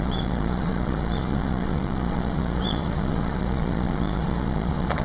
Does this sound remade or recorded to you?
remade